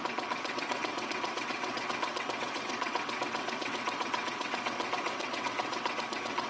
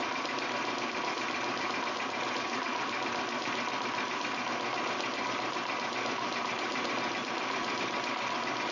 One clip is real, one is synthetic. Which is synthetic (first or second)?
first